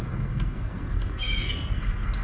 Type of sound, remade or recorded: remade